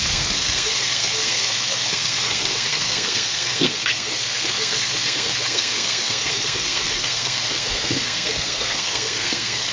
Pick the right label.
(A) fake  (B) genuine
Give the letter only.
A